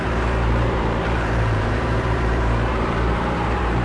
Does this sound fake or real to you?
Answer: fake